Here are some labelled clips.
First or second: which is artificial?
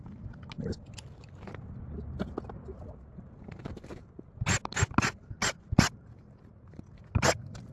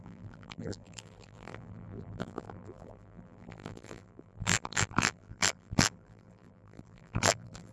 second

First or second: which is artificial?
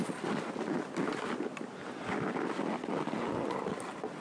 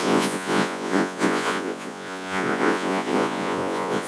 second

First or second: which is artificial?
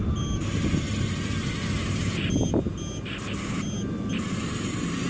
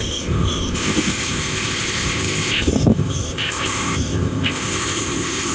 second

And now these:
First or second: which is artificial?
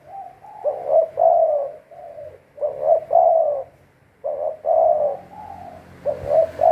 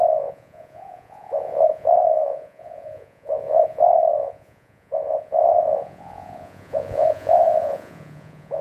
second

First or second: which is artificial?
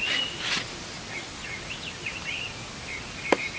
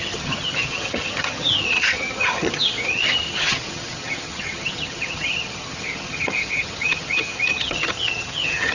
second